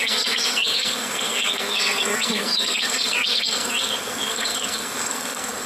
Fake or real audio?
fake